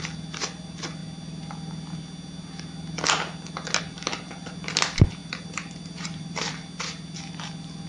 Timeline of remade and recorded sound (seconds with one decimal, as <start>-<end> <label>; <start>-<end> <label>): 0.0-5.2 recorded; 5.2-6.5 remade; 6.5-7.9 recorded